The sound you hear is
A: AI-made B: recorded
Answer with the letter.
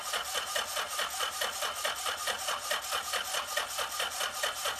B